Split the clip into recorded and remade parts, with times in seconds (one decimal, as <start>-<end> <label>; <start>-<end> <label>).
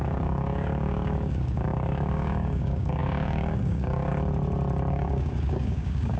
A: 0.0-4.1 remade; 4.1-4.9 recorded; 4.9-6.2 remade